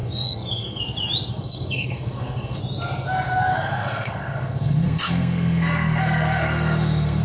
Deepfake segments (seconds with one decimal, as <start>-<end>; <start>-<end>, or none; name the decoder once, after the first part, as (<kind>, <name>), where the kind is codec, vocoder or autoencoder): 0.0-0.8 (codec, SNAC); 1.3-2.6; 3.5-7.2